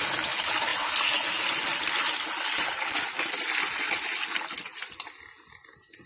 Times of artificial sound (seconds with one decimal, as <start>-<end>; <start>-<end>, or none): none

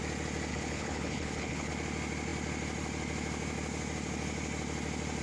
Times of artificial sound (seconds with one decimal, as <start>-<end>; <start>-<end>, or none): 0.5-1.7

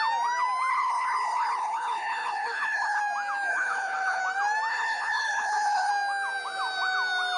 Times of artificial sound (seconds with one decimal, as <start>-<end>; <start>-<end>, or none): 0.7-3.0; 3.5-4.2; 4.7-5.9

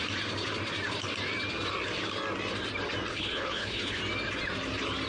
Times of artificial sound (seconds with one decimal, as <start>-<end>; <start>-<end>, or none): 3.1-4.0

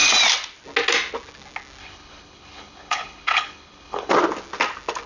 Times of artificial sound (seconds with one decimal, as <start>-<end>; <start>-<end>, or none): 1.8-4.1

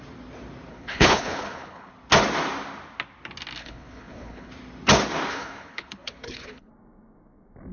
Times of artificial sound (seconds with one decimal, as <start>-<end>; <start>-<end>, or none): 0.7-1.9; 3.6-4.5; 5.3-6.7

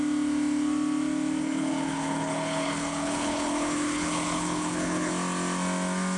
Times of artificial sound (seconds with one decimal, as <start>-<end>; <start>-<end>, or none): 1.4-5.1

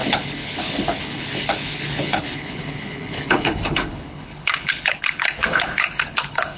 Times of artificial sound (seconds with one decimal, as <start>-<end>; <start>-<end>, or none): 0.0-6.6